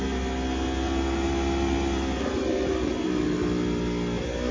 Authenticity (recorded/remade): recorded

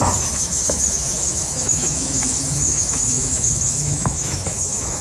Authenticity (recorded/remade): remade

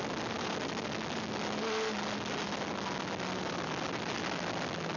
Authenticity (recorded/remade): recorded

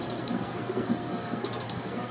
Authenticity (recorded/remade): remade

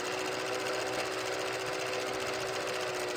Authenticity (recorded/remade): recorded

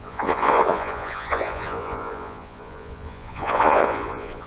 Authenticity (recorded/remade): remade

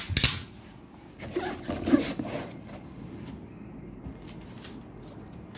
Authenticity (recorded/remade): recorded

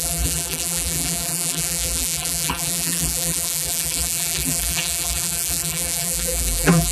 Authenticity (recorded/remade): remade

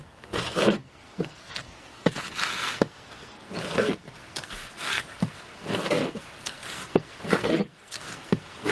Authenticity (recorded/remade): remade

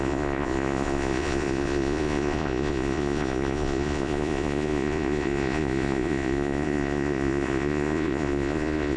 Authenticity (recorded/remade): remade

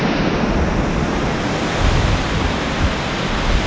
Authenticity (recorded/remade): recorded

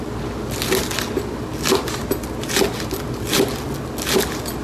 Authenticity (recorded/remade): recorded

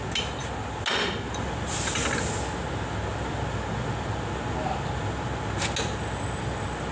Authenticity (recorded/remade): recorded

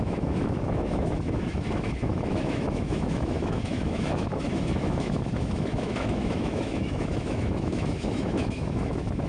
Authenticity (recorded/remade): remade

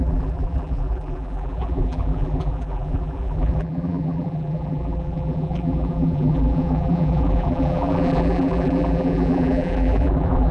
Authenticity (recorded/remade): remade